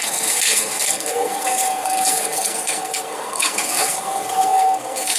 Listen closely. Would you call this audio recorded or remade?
remade